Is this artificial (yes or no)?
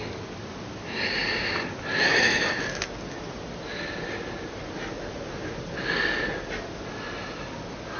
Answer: no